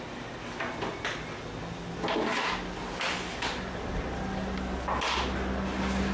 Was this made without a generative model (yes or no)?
yes